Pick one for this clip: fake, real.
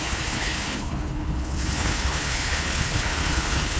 fake